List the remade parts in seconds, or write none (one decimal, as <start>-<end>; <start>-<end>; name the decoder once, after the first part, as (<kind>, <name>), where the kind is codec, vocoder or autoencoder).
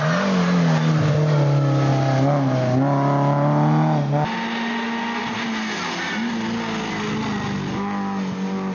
none